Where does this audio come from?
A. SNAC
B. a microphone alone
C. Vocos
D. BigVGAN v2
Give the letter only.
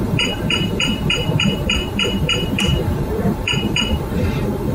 D